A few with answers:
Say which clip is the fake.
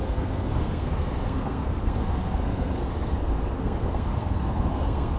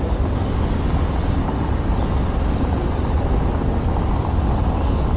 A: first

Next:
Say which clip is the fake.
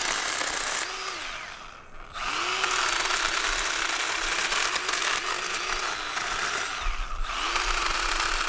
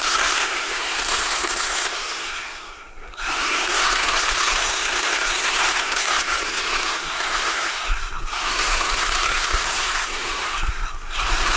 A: second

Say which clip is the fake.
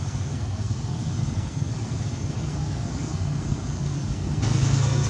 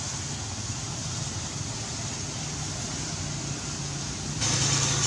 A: first